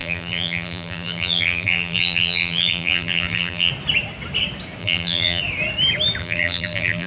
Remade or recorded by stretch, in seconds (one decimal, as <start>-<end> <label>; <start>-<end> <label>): 0.0-3.7 remade; 3.7-4.8 recorded; 4.8-5.4 remade; 5.4-6.2 recorded; 6.2-7.1 remade